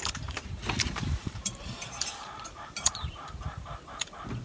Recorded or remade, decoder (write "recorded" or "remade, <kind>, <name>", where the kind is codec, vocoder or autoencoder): remade, vocoder, BigVGAN v2